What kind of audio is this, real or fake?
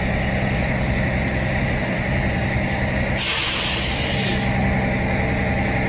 real